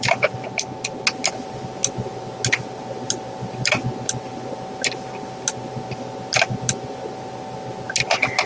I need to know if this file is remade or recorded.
recorded